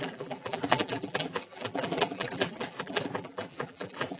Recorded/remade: remade